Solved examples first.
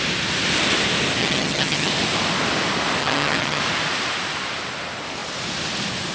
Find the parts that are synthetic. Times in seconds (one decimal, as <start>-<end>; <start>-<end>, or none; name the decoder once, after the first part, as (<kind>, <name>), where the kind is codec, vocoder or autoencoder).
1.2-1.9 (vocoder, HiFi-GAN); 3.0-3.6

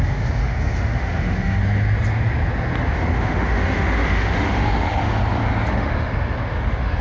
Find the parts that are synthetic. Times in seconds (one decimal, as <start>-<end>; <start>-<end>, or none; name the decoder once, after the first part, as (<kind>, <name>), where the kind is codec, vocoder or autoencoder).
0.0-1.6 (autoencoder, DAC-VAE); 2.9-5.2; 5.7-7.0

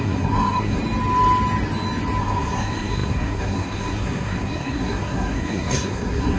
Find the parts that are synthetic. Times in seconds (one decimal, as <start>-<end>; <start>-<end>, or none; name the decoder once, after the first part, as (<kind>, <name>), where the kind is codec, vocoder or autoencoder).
0.0-0.8 (codec, SNAC); 2.2-6.4

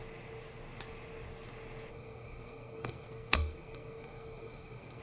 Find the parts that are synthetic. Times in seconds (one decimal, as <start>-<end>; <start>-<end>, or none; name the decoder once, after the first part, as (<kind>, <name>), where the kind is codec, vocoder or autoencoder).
1.9-5.0 (codec, SNAC)